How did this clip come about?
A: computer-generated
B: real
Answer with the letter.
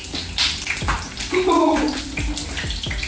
B